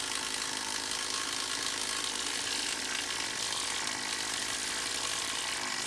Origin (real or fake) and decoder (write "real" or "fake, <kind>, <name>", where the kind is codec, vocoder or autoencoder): real